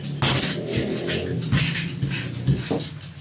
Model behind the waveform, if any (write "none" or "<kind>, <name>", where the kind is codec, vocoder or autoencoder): none